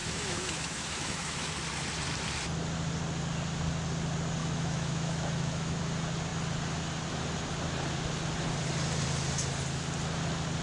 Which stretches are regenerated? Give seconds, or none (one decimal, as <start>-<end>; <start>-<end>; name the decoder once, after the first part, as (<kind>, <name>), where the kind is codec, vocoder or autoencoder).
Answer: 0.0-1.5 (autoencoder, DAC-VAE); 4.4-5.8